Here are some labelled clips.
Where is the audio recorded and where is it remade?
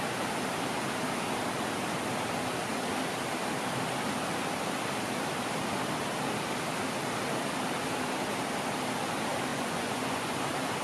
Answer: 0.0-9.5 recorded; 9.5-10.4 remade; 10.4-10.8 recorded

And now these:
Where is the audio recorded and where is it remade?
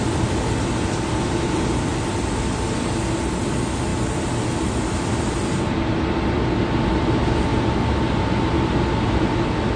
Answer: 0.0-9.8 recorded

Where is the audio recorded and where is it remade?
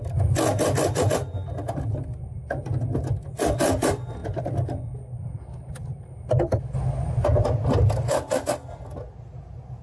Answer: 0.0-9.8 recorded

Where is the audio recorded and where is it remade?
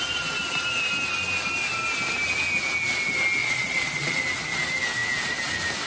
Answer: 0.0-3.4 recorded; 3.4-4.2 remade; 4.2-5.9 recorded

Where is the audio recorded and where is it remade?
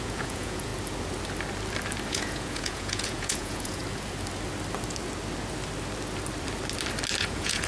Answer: 0.0-0.7 remade; 0.7-2.1 recorded; 2.1-3.8 remade; 3.8-7.2 recorded; 7.2-7.7 remade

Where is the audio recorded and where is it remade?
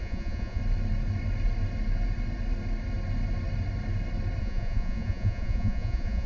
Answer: 0.0-0.6 remade; 0.6-4.4 recorded; 4.4-6.3 remade